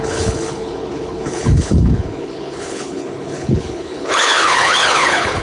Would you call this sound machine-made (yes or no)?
yes